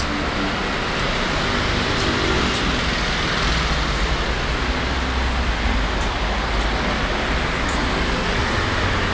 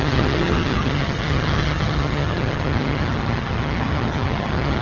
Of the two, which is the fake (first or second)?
second